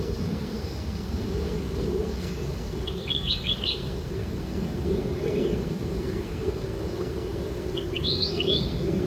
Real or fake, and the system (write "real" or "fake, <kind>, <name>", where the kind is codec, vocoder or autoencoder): fake, codec, SNAC